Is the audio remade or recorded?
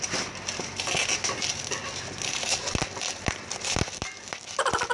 recorded